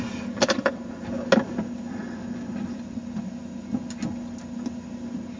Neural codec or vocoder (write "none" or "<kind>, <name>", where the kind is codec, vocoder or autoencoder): none